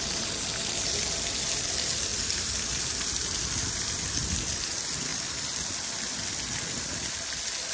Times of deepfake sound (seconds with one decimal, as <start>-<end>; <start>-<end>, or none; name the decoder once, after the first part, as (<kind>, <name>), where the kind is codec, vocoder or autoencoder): none